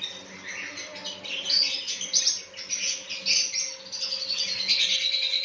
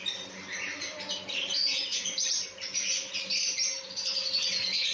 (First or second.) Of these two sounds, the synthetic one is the second